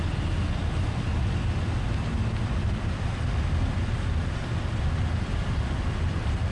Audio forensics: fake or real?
real